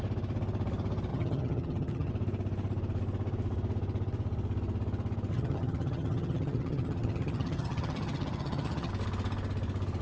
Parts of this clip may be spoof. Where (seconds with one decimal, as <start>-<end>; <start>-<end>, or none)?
1.1-2.1; 5.3-8.9